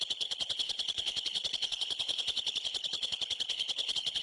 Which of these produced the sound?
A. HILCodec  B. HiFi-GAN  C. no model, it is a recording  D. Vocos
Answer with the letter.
A